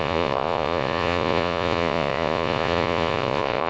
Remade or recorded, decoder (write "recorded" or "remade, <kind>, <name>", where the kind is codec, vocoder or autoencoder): remade, vocoder, Vocos